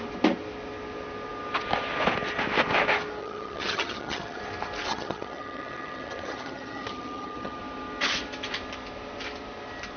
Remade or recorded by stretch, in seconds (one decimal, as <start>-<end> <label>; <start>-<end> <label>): 0.0-3.2 recorded; 3.2-4.4 remade; 4.4-4.9 recorded; 4.9-7.6 remade; 7.6-10.0 recorded